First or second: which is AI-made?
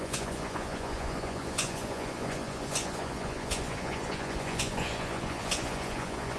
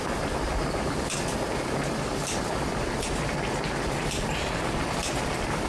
first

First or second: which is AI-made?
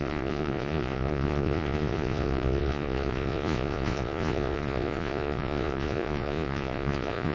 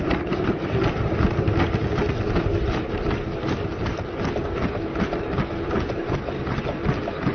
first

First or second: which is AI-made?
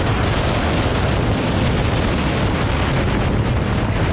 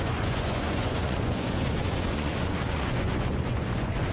second